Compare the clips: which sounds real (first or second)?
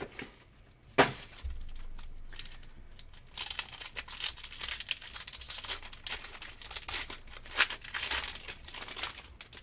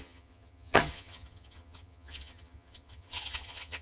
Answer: first